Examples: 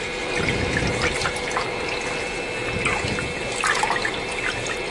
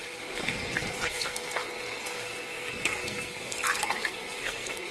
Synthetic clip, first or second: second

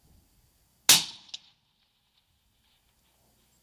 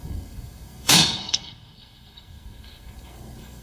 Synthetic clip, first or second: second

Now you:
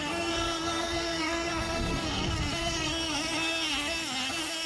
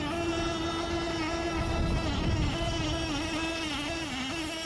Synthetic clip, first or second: first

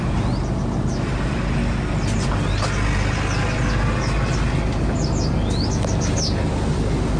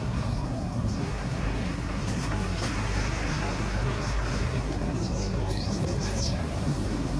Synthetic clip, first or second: second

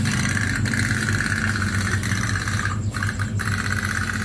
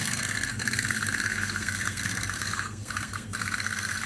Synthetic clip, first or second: second